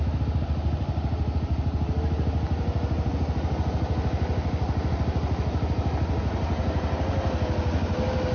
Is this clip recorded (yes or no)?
yes